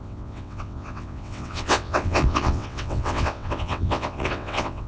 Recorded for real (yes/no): no